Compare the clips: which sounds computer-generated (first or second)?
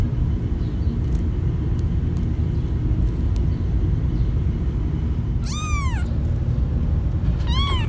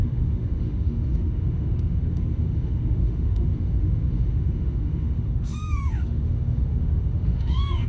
second